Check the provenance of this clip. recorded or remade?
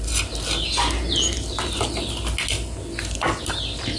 recorded